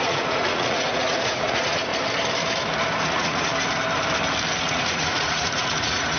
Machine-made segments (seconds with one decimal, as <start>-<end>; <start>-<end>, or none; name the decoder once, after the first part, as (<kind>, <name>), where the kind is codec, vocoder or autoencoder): 0.0-1.9 (vocoder, Vocos); 3.0-3.5; 4.6-6.2